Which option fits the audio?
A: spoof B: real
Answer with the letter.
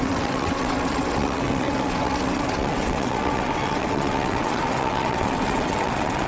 A